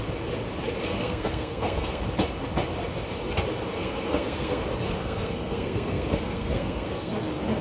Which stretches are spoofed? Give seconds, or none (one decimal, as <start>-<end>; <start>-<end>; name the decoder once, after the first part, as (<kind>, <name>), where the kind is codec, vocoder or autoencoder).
0.9-2.0 (codec, SNAC); 3.7-4.6; 5.0-7.1